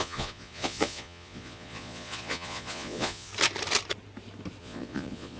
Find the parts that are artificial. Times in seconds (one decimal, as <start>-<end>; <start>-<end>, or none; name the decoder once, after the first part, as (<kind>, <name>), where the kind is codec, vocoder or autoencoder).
0.0-3.3 (vocoder, Vocos); 4.6-5.4